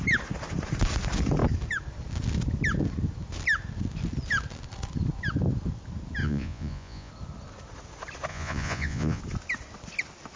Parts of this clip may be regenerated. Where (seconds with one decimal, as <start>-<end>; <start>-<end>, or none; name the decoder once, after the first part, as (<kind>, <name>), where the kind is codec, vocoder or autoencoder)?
6.2-7.1 (vocoder, Vocos); 8.3-9.2